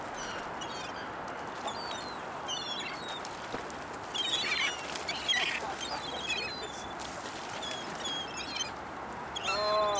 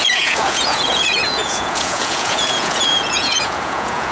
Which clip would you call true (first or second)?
first